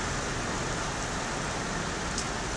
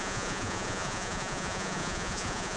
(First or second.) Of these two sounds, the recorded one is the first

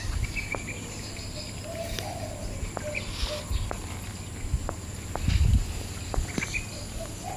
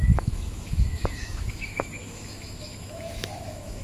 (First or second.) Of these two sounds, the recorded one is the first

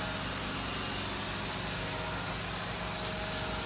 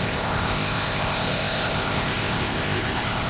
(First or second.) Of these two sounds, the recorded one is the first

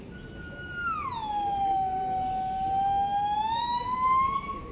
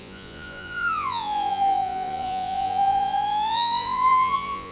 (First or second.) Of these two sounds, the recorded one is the first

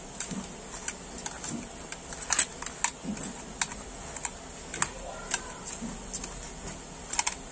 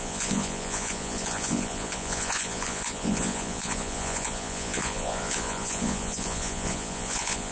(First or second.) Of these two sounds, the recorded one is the first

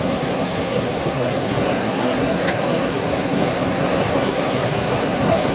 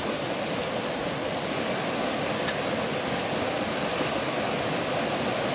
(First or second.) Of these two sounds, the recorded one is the second